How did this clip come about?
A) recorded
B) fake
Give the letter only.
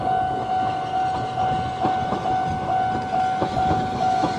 A